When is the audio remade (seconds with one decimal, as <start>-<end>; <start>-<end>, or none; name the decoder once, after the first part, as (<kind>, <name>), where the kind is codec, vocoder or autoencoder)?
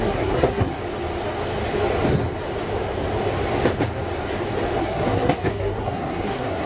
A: 0.0-0.8 (codec, SNAC); 4.8-6.7